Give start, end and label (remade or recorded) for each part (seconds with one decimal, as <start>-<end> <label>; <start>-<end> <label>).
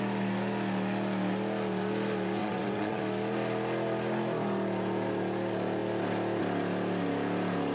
0.0-2.4 recorded; 2.4-3.0 remade; 3.0-7.7 recorded